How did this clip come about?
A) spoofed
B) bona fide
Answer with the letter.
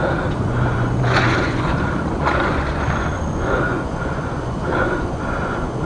A